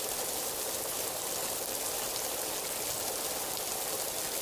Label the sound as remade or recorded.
remade